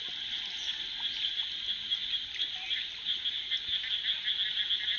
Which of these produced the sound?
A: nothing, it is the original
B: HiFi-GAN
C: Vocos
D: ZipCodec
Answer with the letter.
A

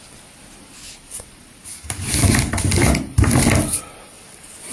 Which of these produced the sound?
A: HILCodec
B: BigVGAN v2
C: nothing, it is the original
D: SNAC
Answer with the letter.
C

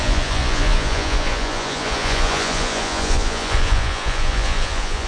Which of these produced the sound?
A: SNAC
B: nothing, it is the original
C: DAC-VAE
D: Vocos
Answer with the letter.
D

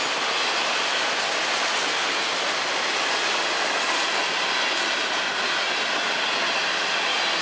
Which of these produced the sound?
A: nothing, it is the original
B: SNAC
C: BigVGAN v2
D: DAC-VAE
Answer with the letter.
A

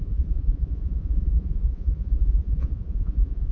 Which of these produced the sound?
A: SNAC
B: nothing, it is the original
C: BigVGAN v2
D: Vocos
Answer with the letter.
D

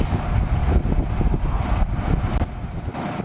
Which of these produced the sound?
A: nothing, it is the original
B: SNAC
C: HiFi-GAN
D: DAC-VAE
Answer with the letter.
A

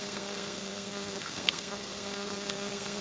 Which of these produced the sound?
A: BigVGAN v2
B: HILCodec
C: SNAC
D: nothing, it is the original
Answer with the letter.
C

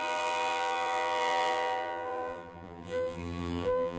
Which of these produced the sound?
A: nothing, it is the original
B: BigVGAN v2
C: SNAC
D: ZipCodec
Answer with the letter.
B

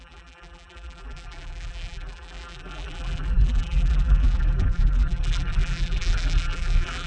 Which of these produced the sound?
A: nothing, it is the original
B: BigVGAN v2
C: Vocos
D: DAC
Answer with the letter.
B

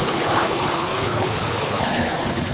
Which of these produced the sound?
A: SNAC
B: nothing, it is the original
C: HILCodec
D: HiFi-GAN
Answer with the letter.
C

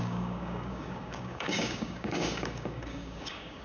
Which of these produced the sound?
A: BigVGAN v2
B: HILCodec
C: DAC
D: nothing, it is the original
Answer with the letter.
C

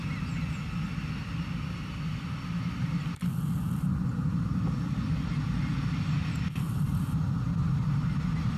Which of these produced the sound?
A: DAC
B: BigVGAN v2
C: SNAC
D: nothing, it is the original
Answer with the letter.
D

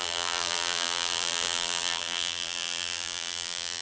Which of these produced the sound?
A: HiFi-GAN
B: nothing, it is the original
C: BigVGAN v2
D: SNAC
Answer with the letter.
C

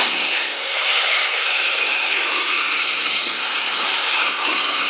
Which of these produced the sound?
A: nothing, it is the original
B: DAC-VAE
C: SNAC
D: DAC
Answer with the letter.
C